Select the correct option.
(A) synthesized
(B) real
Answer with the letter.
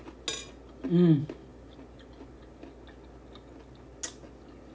B